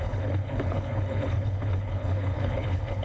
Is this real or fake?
fake